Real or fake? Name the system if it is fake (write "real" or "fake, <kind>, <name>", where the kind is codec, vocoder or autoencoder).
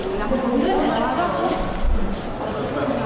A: real